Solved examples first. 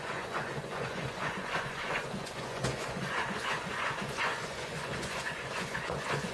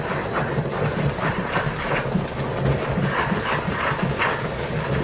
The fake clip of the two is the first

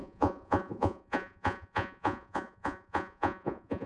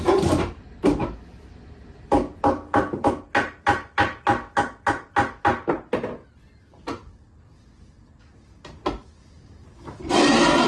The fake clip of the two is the first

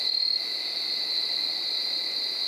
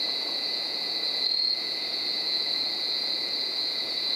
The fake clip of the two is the second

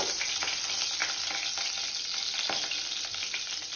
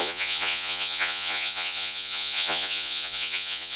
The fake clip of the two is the second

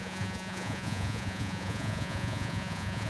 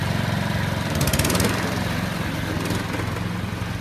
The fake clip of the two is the first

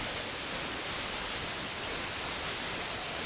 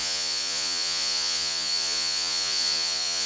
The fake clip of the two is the second